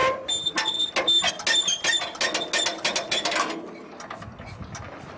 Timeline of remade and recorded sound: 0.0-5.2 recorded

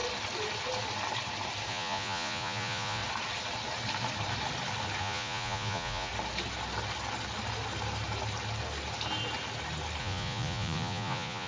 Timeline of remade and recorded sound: 0.0-1.7 recorded; 1.7-3.0 remade; 3.0-5.0 recorded; 5.0-6.1 remade; 6.1-10.0 recorded; 10.0-11.5 remade

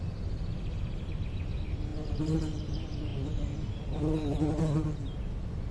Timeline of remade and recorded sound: 0.0-5.7 recorded

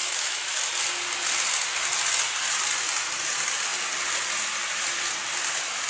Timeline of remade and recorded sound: 0.0-0.6 remade; 0.6-5.9 recorded

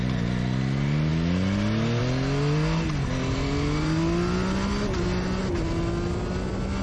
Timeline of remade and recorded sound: 0.0-6.8 recorded

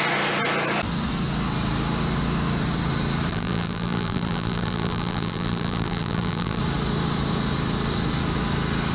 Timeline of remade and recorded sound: 0.0-3.3 recorded; 3.3-6.6 remade; 6.6-8.9 recorded